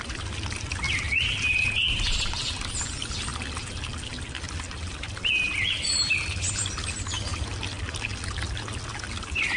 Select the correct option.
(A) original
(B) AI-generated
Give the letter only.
A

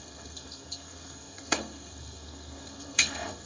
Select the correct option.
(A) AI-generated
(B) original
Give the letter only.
A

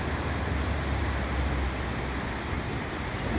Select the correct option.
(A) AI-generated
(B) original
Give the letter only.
B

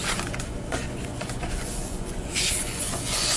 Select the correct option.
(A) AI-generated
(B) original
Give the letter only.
A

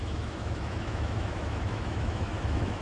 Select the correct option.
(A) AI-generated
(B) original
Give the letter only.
A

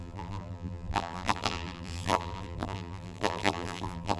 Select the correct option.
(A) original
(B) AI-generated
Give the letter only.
B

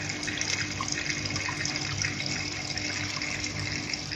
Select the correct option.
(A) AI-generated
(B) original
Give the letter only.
B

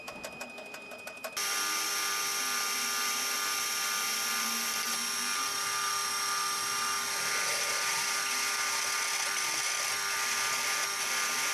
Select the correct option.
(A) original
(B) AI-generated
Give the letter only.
A